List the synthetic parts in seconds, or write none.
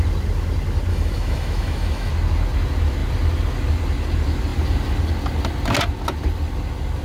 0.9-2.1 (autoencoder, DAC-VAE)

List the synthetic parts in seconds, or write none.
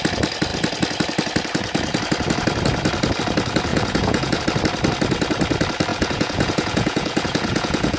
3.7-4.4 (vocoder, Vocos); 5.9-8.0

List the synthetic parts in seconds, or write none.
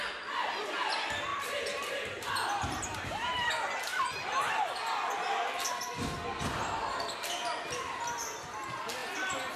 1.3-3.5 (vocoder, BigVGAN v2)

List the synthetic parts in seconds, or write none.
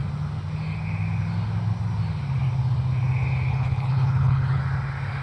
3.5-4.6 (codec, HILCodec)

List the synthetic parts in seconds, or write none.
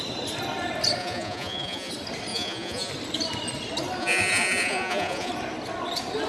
1.0-1.9 (vocoder, Vocos); 2.3-2.9; 4.0-5.3